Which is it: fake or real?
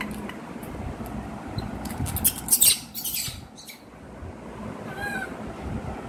real